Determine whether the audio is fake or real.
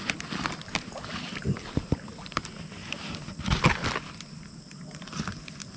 real